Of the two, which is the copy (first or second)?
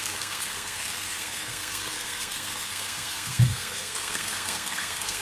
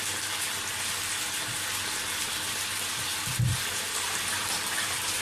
first